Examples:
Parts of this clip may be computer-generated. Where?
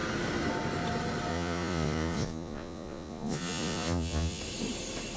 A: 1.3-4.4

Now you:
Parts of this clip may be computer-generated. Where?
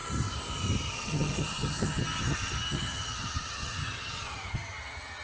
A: 0.9-5.2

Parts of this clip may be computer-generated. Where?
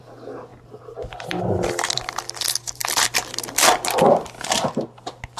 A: 0.5-1.4; 2.8-3.3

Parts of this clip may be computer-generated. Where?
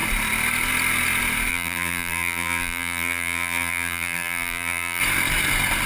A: 1.5-5.0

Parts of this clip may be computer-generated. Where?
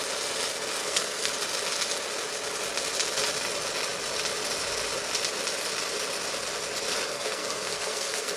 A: 0.8-1.3; 7.1-8.4